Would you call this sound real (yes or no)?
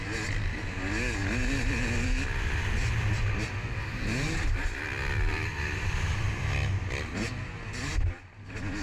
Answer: yes